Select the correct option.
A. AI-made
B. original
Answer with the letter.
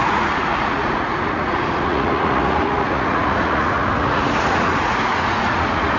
A